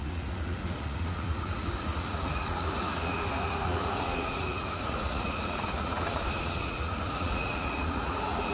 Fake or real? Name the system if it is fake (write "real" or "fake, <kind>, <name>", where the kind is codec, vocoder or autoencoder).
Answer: fake, vocoder, Vocos